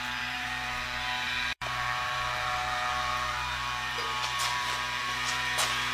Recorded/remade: remade